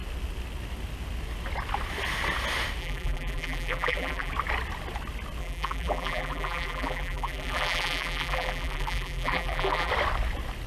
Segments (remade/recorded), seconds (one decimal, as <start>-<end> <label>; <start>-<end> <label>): 0.0-2.8 recorded; 2.8-4.3 remade; 4.3-5.4 recorded; 5.4-9.9 remade; 9.9-10.7 recorded